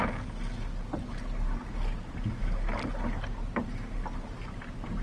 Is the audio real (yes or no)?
yes